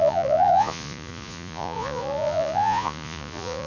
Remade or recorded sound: remade